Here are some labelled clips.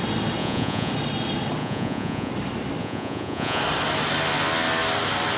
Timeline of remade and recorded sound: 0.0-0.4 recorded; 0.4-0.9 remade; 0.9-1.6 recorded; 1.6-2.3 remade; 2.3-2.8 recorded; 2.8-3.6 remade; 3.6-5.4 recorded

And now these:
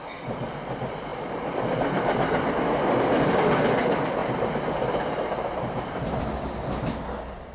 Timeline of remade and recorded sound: 0.0-7.5 recorded

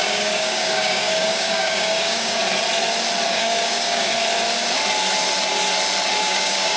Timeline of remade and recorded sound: 0.0-2.4 remade; 2.4-3.3 recorded; 3.3-4.1 remade; 4.1-6.2 recorded; 6.2-6.8 remade

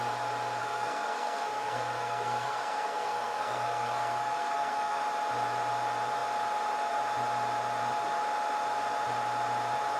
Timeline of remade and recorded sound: 0.0-0.6 recorded; 0.6-5.0 remade; 5.0-10.0 recorded

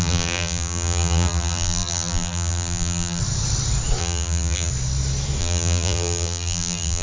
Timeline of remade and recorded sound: 0.0-3.2 remade; 3.2-4.0 recorded; 4.0-4.7 remade; 4.7-5.4 recorded; 5.4-7.0 remade

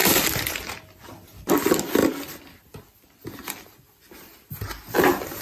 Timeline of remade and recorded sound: 0.0-1.5 remade; 1.5-2.0 recorded; 2.0-5.4 remade

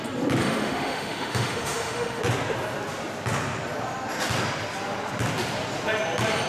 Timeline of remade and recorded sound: 0.0-0.4 recorded; 0.4-2.2 remade; 2.2-6.5 recorded

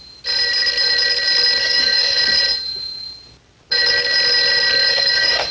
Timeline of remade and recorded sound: 0.0-1.6 recorded; 1.6-2.2 remade; 2.2-4.8 recorded; 4.8-5.5 remade